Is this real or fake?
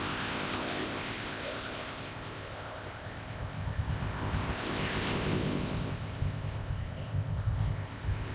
fake